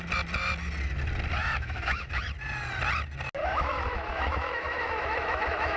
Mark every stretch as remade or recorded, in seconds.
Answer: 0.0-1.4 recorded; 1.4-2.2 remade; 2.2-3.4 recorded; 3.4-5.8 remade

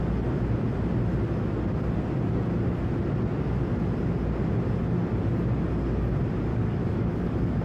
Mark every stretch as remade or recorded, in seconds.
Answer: 0.0-6.5 recorded; 6.5-7.6 remade

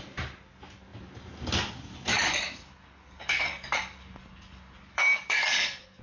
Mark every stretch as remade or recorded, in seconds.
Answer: 0.0-2.1 recorded; 2.1-6.0 remade